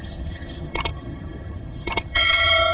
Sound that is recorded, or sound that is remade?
remade